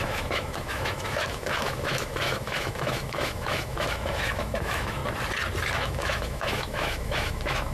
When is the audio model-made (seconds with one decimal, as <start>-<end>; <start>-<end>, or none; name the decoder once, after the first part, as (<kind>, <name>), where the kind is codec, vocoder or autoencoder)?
0.0-5.0 (autoencoder, DAC-VAE); 5.7-7.7